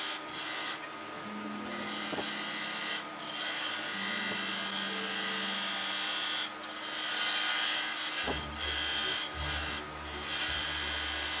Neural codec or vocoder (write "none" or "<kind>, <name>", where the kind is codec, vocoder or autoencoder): none